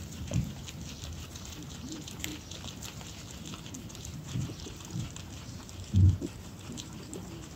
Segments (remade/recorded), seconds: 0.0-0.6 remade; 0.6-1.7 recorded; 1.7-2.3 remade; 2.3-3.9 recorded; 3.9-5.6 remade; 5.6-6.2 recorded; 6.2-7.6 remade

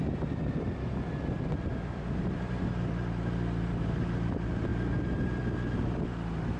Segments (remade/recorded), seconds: 0.0-4.7 recorded; 4.7-5.4 remade; 5.4-6.6 recorded

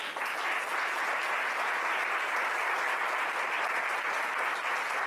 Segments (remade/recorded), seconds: 0.0-5.1 recorded

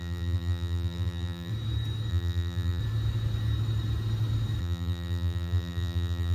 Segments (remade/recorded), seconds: 0.0-1.5 remade; 1.5-2.1 recorded; 2.1-2.8 remade; 2.8-4.6 recorded; 4.6-6.3 remade

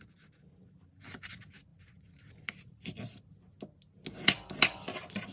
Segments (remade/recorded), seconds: 0.0-1.7 recorded; 1.7-3.2 remade; 3.2-5.3 recorded

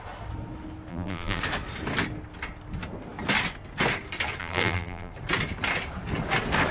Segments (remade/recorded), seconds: 0.0-0.9 recorded; 0.9-1.4 remade; 1.4-4.4 recorded; 4.4-5.1 remade; 5.1-6.7 recorded

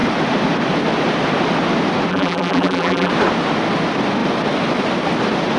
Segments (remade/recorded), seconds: 0.0-2.1 recorded; 2.1-3.1 remade; 3.1-5.6 recorded

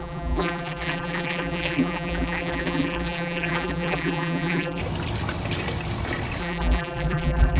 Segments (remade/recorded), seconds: 0.0-4.8 remade; 4.8-6.4 recorded; 6.4-7.6 remade